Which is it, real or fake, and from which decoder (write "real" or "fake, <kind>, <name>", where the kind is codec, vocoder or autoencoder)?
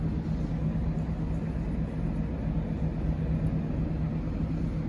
real